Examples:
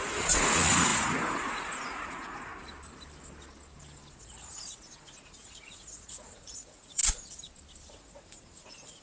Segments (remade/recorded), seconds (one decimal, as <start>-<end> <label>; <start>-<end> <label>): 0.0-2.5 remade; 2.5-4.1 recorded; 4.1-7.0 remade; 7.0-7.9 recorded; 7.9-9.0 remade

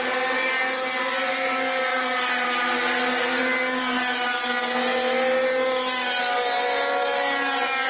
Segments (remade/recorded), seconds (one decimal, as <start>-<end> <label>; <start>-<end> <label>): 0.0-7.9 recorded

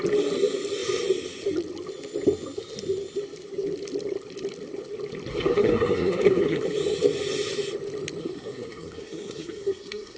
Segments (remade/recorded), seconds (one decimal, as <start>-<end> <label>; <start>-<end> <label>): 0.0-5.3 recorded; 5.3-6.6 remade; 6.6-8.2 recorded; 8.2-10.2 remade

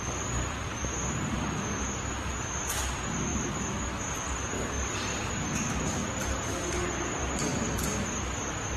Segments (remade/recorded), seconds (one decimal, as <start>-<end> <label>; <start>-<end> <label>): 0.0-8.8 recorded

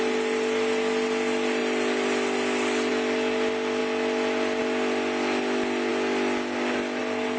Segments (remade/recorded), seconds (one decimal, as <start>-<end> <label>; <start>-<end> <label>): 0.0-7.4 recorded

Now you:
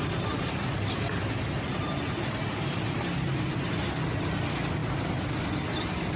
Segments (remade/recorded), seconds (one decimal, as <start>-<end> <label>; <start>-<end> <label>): 0.0-6.2 recorded

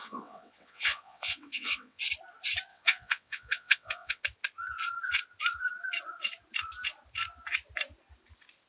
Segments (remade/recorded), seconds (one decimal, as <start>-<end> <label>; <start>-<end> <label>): 0.0-2.0 remade; 2.0-2.7 recorded; 2.7-4.2 remade; 4.2-8.7 recorded